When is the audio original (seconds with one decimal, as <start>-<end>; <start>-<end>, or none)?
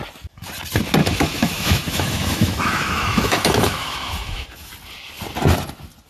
0.0-1.0; 4.7-6.1